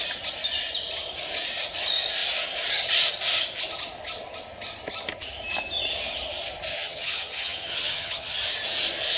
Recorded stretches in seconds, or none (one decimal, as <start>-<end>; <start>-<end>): 0.0-6.7; 8.4-9.2